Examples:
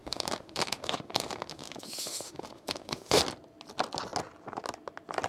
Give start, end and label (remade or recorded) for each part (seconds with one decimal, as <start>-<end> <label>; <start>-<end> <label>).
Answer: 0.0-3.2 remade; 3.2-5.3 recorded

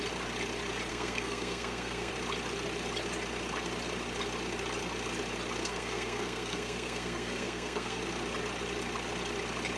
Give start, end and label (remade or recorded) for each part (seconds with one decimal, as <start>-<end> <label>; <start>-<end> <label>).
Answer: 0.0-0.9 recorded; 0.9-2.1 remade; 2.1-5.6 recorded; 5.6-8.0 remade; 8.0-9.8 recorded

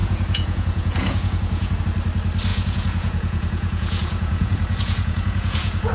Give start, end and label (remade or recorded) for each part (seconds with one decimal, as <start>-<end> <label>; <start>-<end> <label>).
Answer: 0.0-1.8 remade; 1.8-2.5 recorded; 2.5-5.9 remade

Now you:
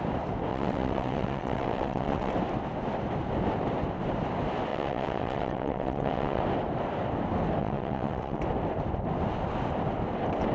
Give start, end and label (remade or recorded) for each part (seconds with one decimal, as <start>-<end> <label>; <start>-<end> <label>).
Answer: 0.0-0.5 recorded; 0.5-2.3 remade; 2.3-4.7 recorded; 4.7-6.4 remade; 6.4-7.6 recorded; 7.6-8.4 remade; 8.4-10.5 recorded

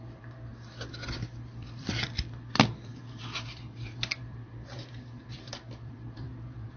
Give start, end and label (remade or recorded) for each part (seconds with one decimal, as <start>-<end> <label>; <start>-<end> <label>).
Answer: 0.0-0.5 remade; 0.5-1.5 recorded; 1.5-6.8 remade

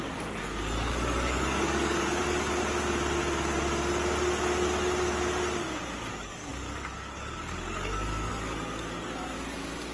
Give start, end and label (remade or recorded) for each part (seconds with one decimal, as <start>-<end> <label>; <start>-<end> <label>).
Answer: 0.0-2.2 remade; 2.2-6.1 recorded; 6.1-9.9 remade